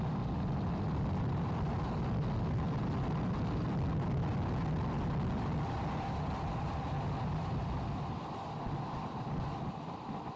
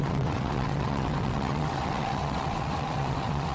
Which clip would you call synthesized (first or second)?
second